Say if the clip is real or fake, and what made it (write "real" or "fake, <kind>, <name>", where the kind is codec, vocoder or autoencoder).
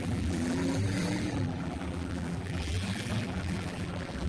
fake, vocoder, BigVGAN v2